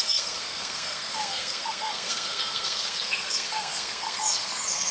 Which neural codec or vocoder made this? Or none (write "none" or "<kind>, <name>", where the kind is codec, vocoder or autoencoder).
codec, SNAC